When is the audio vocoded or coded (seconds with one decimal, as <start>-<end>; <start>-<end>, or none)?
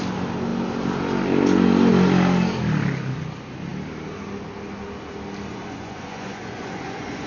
5.5-7.3